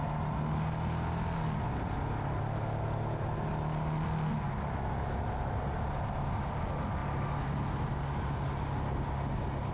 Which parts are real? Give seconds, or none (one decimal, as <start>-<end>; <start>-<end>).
0.0-9.7